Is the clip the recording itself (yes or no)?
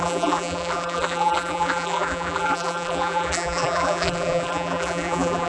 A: no